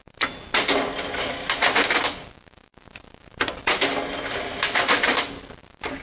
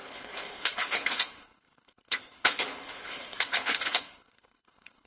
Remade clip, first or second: second